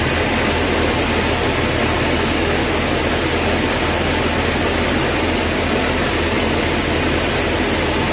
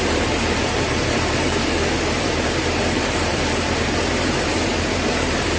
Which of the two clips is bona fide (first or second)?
first